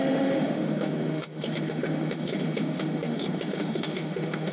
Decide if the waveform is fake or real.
fake